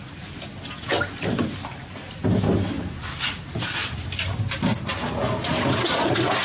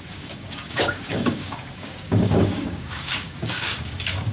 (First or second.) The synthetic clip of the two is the second